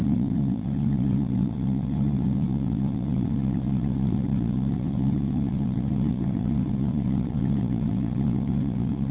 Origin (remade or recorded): remade